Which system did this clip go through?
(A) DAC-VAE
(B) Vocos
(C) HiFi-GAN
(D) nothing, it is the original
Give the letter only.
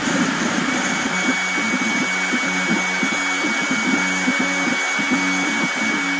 D